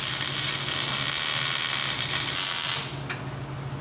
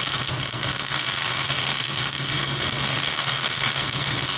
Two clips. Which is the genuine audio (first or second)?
first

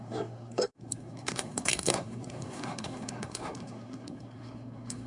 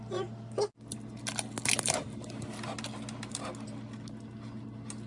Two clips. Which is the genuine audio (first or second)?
second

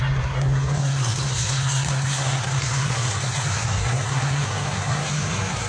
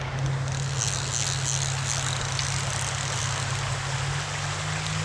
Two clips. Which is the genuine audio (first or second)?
second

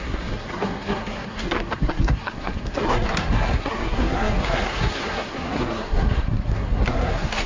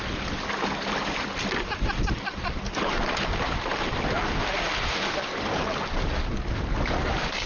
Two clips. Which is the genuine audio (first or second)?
second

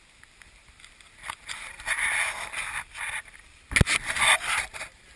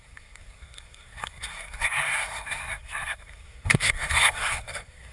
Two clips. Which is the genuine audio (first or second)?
first